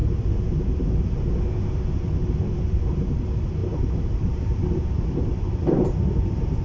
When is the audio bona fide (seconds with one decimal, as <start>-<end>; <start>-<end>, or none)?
1.1-3.6